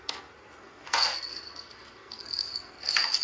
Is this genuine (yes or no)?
no